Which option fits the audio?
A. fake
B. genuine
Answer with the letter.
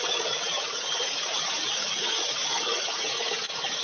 A